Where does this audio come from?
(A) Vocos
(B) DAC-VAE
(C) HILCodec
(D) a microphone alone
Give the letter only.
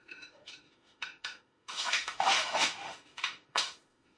B